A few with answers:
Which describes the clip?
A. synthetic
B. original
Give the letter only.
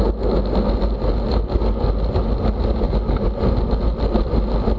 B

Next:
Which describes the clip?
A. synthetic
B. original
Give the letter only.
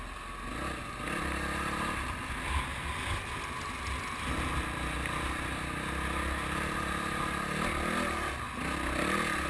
B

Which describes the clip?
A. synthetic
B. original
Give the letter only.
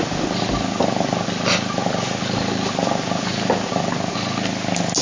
B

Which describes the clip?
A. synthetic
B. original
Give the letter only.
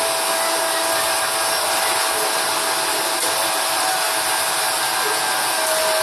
B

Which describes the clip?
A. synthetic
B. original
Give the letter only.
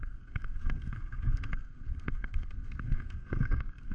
A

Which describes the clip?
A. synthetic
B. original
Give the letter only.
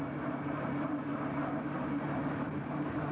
B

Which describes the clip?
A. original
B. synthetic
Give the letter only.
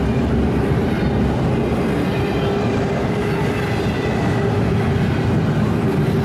A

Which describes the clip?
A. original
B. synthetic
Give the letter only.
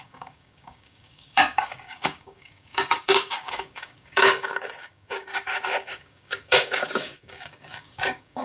B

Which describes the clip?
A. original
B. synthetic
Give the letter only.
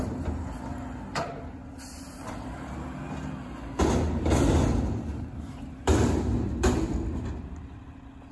A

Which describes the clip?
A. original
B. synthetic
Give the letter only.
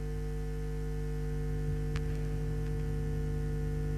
A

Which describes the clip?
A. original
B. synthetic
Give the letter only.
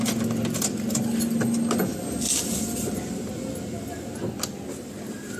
A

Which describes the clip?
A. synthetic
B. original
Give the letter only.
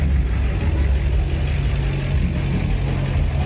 B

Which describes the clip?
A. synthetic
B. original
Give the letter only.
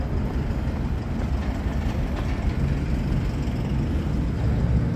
B